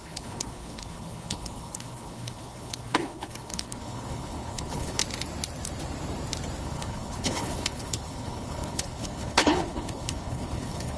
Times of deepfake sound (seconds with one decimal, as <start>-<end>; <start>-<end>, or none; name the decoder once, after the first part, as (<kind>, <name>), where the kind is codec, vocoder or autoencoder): 0.0-5.0 (codec, HILCodec); 6.6-11.0